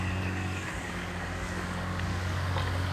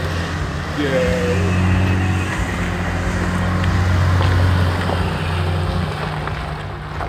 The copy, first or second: first